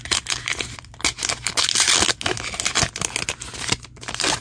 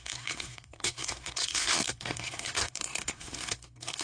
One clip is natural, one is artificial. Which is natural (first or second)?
first